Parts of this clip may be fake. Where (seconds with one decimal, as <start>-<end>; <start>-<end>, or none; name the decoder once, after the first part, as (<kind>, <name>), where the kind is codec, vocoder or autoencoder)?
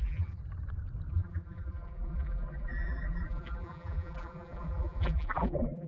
0.0-0.4 (vocoder, BigVGAN v2); 1.1-5.9